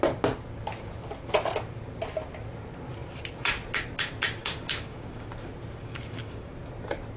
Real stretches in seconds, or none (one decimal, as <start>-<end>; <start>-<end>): 0.0-4.4; 5.3-5.8; 6.5-7.2